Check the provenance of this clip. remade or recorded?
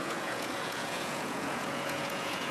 remade